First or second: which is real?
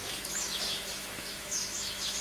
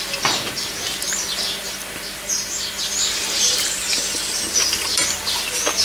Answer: second